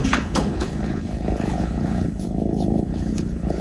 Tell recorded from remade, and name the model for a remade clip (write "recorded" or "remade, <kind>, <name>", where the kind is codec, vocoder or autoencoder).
remade, codec, HILCodec